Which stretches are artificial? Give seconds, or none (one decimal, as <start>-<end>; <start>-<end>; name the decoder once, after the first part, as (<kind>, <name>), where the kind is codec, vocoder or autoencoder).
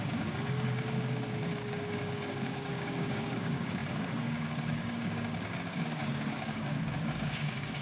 0.0-7.8 (codec, DAC)